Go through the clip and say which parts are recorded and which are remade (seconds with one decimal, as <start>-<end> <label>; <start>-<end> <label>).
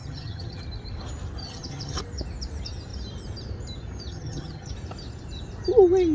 0.0-0.6 remade; 0.6-1.4 recorded; 1.4-2.0 remade; 2.0-4.1 recorded; 4.1-4.7 remade; 4.7-6.1 recorded